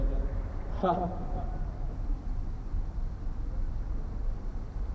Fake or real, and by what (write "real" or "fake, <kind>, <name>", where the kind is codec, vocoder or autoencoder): real